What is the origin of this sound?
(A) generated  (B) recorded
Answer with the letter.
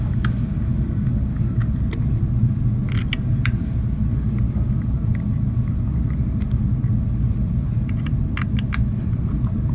B